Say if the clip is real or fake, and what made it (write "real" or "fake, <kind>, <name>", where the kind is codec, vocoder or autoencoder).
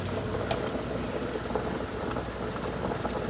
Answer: real